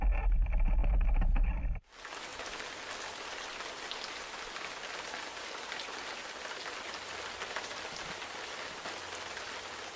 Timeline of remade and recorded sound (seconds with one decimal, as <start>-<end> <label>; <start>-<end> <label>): 0.0-10.0 recorded